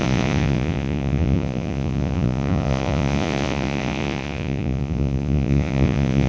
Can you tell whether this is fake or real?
fake